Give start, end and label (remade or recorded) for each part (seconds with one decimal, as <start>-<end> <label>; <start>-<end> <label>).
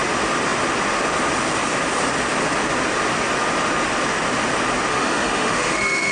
0.0-4.9 recorded; 4.9-6.1 remade